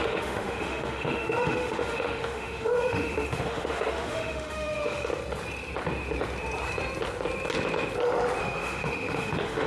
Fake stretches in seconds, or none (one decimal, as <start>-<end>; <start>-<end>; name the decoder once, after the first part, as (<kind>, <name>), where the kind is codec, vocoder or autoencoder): 0.0-5.1 (autoencoder, DAC-VAE); 8.4-9.7